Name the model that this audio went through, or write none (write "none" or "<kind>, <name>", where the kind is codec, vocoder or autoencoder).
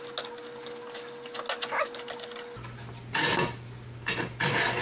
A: none